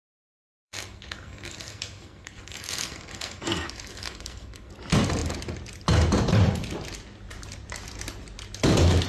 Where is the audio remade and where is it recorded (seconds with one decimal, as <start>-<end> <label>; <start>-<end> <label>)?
0.0-4.7 remade; 4.7-9.1 recorded